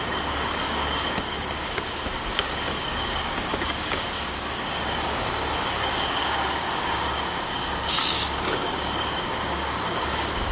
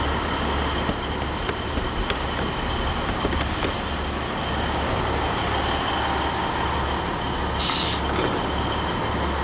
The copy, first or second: first